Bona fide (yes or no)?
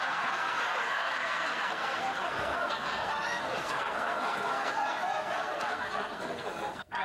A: no